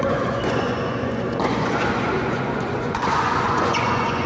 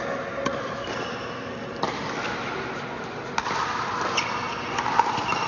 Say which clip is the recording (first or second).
second